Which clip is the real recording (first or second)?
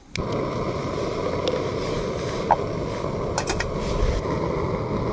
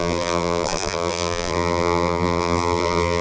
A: first